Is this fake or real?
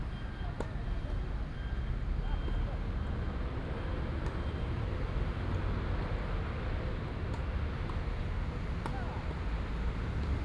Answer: real